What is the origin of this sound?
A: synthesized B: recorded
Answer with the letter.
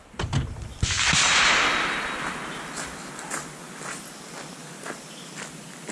B